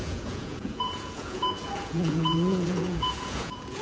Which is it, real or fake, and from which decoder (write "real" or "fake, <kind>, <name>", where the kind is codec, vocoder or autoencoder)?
fake, vocoder, Vocos